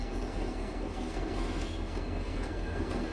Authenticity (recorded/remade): remade